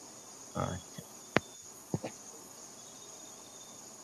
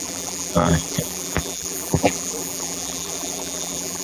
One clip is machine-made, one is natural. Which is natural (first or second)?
first